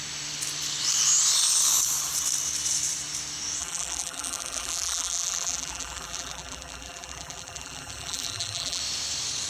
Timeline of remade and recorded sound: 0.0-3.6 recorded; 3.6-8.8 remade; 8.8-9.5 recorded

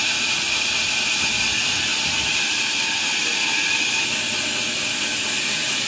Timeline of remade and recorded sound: 0.0-0.8 remade; 0.8-5.9 recorded

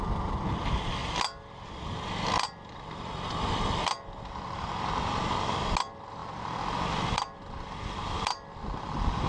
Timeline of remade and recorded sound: 0.0-9.3 recorded

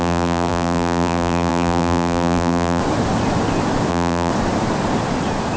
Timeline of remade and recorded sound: 0.0-2.8 remade; 2.8-3.9 recorded; 3.9-4.3 remade; 4.3-5.6 recorded